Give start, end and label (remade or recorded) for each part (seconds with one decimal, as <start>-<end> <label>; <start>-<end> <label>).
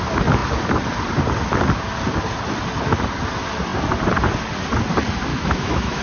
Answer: 0.0-5.3 recorded; 5.3-6.0 remade